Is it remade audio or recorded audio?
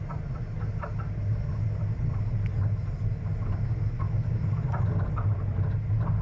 recorded